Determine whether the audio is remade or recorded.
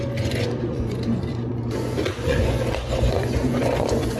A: remade